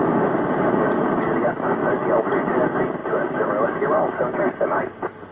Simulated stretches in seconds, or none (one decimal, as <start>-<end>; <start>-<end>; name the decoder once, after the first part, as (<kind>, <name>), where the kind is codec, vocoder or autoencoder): none